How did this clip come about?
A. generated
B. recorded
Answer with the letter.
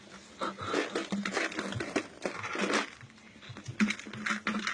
B